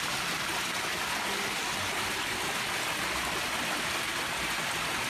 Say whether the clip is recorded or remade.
recorded